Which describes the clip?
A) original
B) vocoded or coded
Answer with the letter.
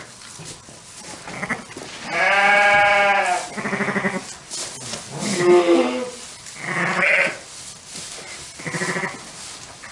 A